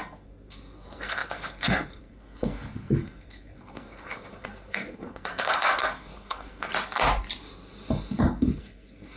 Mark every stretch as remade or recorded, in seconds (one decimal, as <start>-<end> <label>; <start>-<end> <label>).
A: 0.0-6.7 remade; 6.7-8.2 recorded; 8.2-9.2 remade